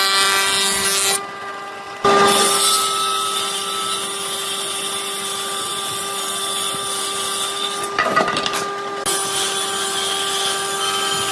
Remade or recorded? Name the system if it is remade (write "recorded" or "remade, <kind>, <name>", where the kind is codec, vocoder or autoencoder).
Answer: recorded